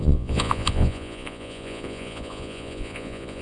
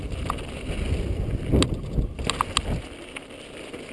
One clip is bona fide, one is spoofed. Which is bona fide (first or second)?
second